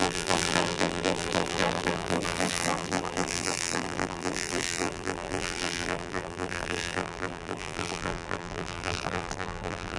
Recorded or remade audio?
remade